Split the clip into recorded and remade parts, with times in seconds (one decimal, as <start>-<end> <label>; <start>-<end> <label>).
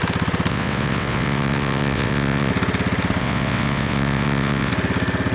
0.0-0.5 recorded; 0.5-2.5 remade; 2.5-3.2 recorded; 3.2-4.7 remade; 4.7-5.3 recorded